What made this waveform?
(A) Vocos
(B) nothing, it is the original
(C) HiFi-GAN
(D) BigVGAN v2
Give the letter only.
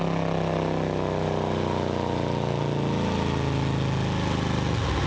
B